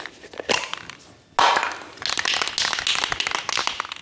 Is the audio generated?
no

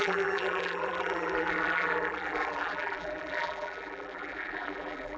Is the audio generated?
yes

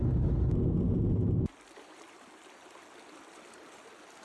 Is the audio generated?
no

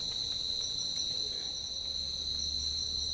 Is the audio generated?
no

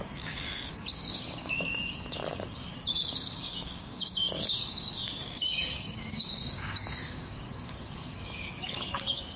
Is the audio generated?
yes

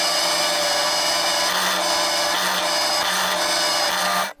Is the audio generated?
no